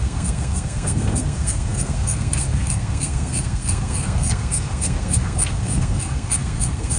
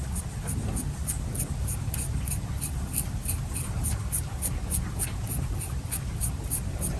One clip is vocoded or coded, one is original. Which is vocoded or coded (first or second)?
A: first